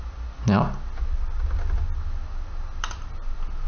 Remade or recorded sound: recorded